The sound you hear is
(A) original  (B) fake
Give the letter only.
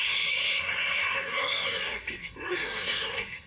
B